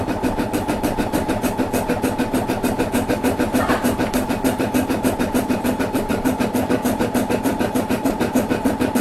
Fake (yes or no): yes